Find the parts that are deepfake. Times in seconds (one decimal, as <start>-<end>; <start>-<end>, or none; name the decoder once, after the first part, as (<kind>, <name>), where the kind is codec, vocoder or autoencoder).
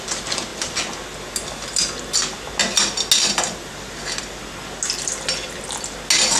none